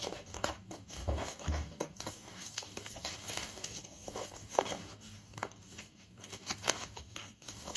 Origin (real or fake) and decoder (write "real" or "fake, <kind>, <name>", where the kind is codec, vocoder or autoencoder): fake, codec, DAC